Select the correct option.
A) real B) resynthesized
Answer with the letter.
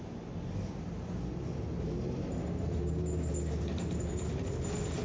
A